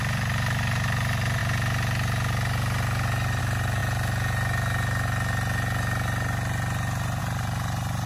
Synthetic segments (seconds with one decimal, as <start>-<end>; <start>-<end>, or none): 0.0-1.4; 3.4-3.8; 7.2-8.1